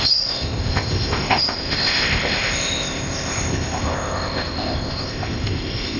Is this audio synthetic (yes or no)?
yes